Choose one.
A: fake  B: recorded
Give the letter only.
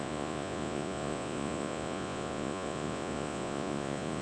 A